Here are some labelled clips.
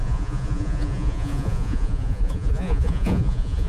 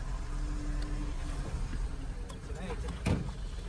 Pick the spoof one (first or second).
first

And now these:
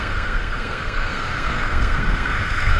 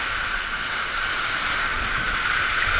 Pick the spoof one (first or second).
first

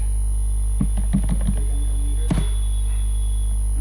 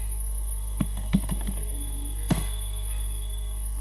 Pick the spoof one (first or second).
second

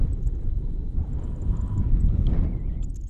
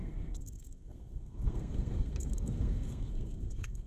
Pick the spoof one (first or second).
second